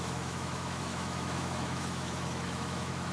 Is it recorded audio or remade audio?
remade